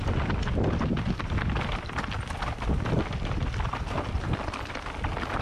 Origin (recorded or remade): recorded